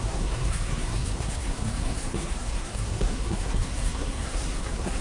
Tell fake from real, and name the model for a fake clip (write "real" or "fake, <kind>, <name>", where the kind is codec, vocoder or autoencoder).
fake, codec, SNAC